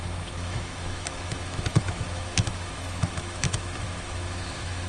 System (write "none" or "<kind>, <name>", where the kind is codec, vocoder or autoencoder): autoencoder, DAC-VAE